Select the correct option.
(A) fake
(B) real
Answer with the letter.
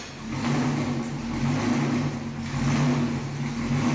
B